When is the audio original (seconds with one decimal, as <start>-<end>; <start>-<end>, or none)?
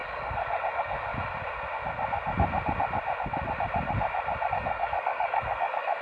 1.1-4.5